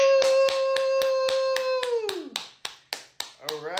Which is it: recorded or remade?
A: recorded